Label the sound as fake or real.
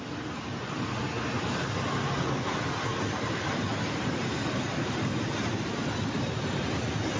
real